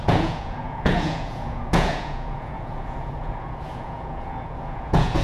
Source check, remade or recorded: remade